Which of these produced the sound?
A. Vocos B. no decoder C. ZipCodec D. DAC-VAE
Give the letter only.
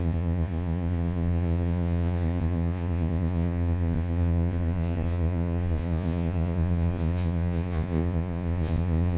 A